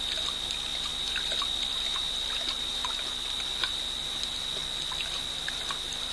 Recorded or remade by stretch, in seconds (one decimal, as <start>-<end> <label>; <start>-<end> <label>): 0.0-6.1 recorded